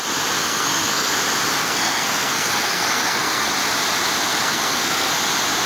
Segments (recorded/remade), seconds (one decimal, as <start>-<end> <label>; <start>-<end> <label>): 0.0-0.4 recorded; 0.4-1.1 remade; 1.1-1.6 recorded; 1.6-3.5 remade; 3.5-4.3 recorded; 4.3-5.1 remade; 5.1-5.7 recorded